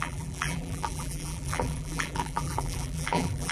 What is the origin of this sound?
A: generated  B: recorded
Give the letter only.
A